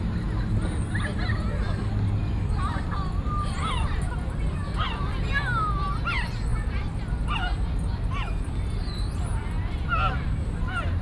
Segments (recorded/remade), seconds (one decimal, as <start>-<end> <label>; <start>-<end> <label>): 0.0-11.0 recorded